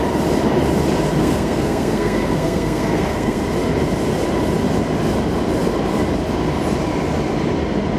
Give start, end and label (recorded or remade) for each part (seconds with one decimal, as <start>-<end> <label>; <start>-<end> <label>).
0.0-1.2 recorded; 1.2-3.4 remade; 3.4-8.0 recorded

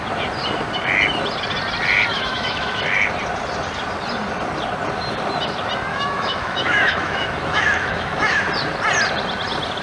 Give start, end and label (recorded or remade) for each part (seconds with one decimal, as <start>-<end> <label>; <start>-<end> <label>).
0.0-2.1 recorded; 2.1-2.8 remade; 2.8-5.9 recorded; 5.9-8.4 remade; 8.4-9.8 recorded

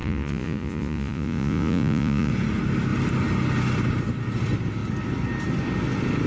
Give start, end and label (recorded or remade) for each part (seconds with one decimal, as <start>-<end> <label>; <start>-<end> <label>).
0.0-2.3 remade; 2.3-6.3 recorded

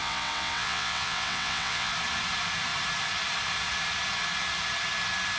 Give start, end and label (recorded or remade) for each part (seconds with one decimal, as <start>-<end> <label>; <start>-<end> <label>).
0.0-1.9 remade; 1.9-5.4 recorded

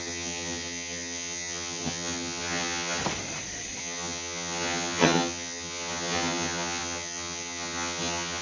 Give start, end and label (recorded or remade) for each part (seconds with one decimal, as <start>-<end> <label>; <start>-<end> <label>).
0.0-3.0 remade; 3.0-3.8 recorded; 3.8-8.4 remade

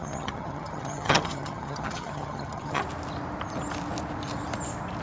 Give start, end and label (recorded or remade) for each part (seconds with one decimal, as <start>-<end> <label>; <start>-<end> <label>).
0.0-2.8 remade; 2.8-5.0 recorded

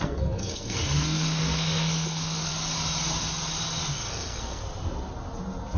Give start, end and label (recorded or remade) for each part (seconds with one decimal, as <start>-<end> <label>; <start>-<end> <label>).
0.0-2.5 remade; 2.5-3.9 recorded; 3.9-4.6 remade; 4.6-5.8 recorded